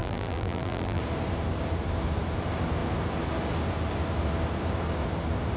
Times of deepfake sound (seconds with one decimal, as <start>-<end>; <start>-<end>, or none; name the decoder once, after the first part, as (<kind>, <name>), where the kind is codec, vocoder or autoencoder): 0.0-1.0 (vocoder, BigVGAN v2)